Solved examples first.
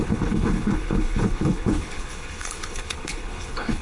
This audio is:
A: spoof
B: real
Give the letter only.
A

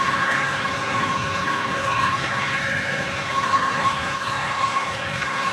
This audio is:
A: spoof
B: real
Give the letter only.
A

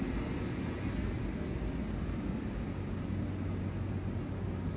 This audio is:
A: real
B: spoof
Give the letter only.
A